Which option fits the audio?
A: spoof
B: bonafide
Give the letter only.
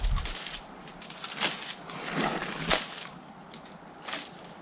B